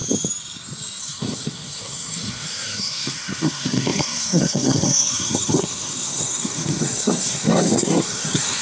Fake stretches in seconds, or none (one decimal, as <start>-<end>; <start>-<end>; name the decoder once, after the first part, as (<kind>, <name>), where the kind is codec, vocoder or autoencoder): 1.0-8.6 (codec, SNAC)